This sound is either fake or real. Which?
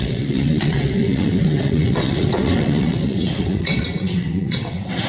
fake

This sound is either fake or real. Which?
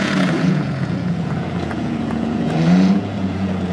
fake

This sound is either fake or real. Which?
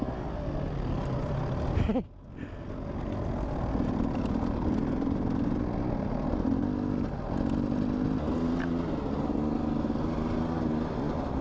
real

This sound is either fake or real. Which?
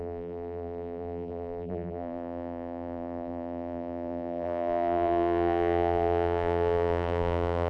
fake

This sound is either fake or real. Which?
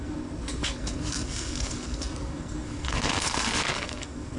fake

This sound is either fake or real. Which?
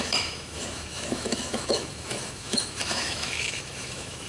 fake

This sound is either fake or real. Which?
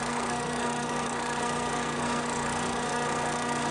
fake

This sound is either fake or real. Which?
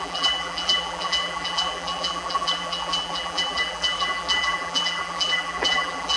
fake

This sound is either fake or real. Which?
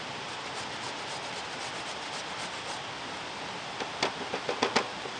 real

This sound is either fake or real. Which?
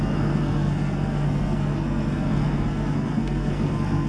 fake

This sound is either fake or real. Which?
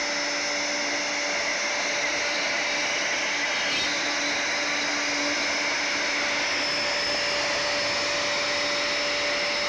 real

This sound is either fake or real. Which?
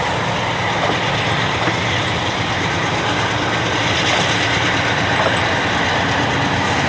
real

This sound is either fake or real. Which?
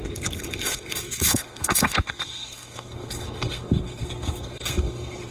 fake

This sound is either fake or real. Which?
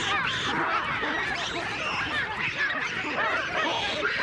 real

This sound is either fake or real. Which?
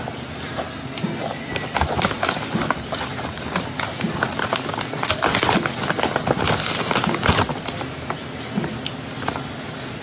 real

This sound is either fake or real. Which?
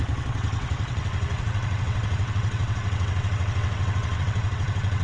fake